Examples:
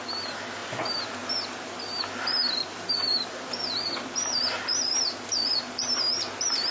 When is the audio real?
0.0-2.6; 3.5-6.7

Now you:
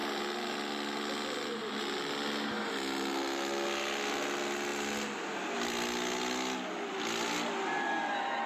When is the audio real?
0.0-8.5

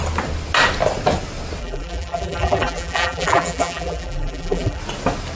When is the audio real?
0.0-1.6; 4.8-5.4

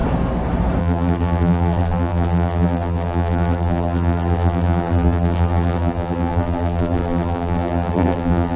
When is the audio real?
0.0-0.8

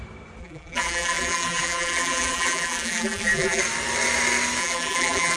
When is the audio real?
0.0-0.4; 3.6-4.6

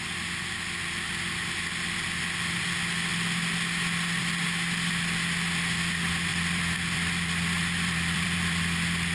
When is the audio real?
0.0-6.3; 8.6-9.1

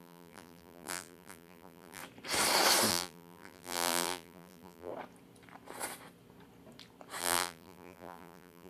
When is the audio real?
2.0-2.9; 4.9-7.2